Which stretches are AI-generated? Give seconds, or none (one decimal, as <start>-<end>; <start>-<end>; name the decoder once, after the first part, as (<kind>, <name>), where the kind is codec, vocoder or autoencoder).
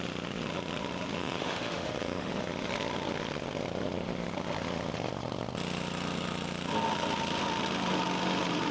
1.2-2.3 (autoencoder, DAC-VAE)